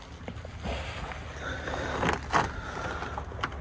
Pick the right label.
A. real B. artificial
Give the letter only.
A